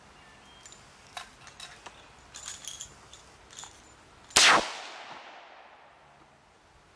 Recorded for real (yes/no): yes